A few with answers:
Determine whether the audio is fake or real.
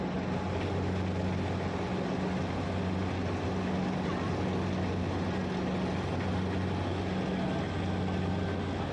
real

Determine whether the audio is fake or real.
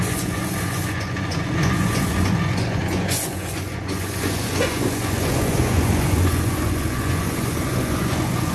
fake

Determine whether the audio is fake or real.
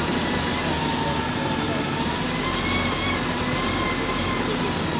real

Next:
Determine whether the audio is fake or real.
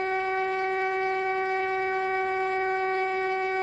fake